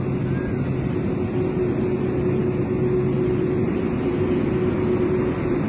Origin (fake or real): real